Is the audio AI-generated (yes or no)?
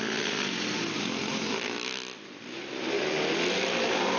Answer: no